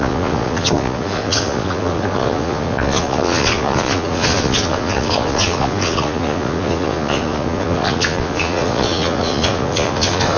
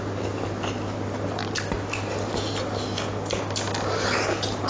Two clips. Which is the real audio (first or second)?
second